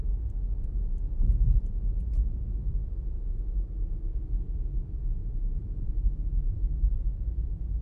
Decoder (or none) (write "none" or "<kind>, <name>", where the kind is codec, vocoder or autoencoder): vocoder, BigVGAN v2